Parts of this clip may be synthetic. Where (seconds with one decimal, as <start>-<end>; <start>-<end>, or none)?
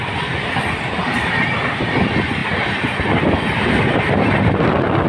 0.0-5.1